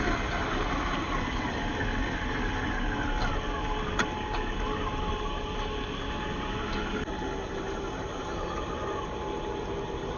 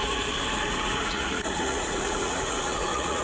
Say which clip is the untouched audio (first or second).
first